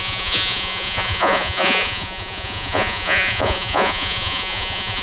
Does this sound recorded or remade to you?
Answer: remade